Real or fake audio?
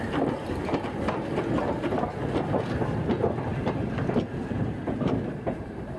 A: real